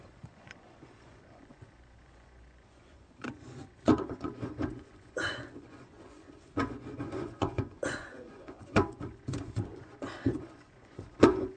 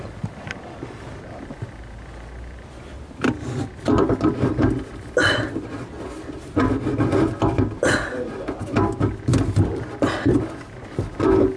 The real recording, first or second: second